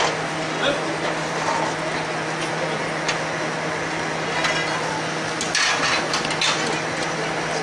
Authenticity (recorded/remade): recorded